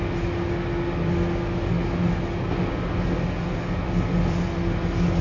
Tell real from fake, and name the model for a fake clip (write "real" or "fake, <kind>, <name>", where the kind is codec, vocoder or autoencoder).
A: real